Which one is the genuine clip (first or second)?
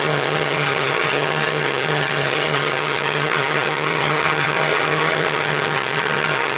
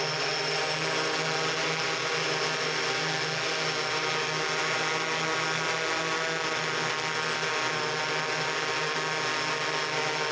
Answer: second